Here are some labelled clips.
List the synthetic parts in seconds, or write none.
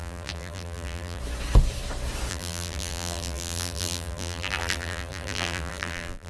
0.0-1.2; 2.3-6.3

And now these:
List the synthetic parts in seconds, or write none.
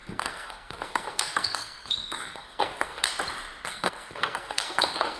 0.0-3.1; 3.7-5.2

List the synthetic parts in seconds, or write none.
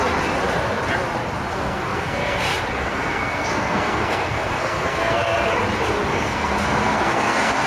1.5-2.4; 2.8-5.5; 6.1-7.7